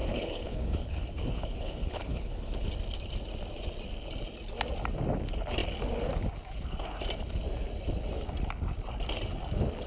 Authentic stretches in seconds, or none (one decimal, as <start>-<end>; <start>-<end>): 2.7-9.9